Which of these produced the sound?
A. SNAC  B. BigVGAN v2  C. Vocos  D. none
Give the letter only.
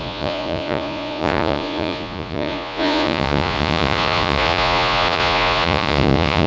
C